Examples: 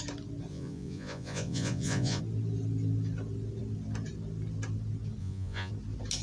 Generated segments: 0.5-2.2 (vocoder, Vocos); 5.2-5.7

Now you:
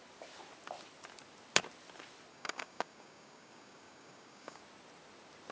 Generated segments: 2.3-4.6 (codec, DAC)

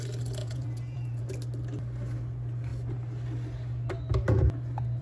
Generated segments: 0.4-1.2 (vocoder, Vocos)